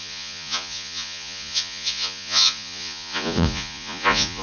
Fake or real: fake